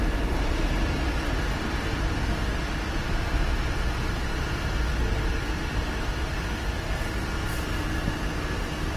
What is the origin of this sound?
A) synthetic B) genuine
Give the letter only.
B